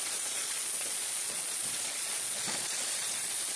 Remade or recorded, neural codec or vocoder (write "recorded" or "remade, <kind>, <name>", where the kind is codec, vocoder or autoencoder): remade, vocoder, Vocos